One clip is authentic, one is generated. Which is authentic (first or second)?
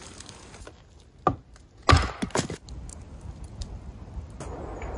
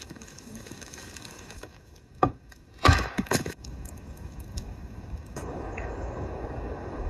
first